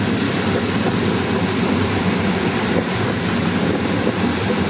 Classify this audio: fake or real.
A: real